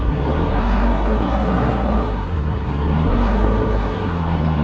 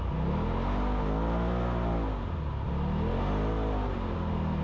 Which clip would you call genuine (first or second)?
second